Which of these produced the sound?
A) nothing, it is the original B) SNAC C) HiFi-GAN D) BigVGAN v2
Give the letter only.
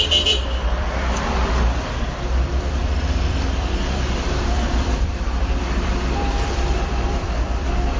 D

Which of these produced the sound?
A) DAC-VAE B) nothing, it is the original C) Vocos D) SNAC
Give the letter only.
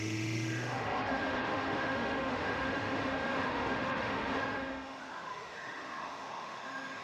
A